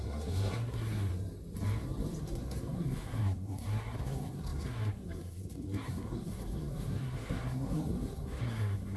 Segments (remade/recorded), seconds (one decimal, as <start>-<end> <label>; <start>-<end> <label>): 0.0-1.1 remade; 1.1-2.2 recorded; 2.2-9.0 remade

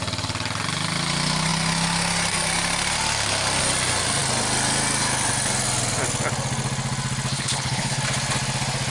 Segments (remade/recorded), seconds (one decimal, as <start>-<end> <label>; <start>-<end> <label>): 0.0-7.3 recorded; 7.3-8.0 remade; 8.0-8.9 recorded

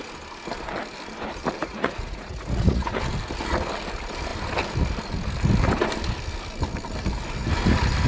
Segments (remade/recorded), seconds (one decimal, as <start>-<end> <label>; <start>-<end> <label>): 0.0-1.6 recorded; 1.6-3.0 remade; 3.0-8.1 recorded

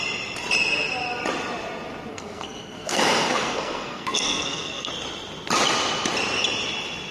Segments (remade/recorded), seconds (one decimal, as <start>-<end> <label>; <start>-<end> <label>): 0.0-2.1 recorded; 2.1-4.9 remade; 4.9-7.1 recorded

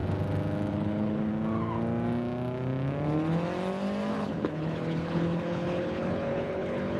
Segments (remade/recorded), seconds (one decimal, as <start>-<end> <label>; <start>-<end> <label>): 0.0-0.7 recorded; 0.7-1.3 remade; 1.3-4.1 recorded; 4.1-7.0 remade

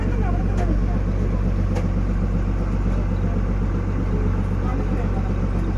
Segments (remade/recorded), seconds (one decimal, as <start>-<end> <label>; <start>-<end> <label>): 0.0-5.8 recorded

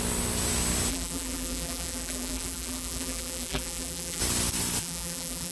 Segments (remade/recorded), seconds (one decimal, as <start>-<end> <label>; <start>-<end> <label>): 0.0-0.9 recorded; 0.9-4.2 remade; 4.2-4.8 recorded; 4.8-5.5 remade

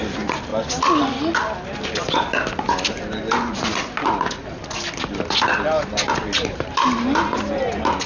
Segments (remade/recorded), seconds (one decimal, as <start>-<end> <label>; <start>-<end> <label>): 0.0-8.1 recorded